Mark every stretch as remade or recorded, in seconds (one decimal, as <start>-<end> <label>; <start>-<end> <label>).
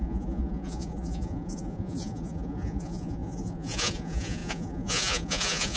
0.0-5.8 remade